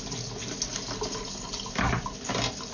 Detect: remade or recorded recorded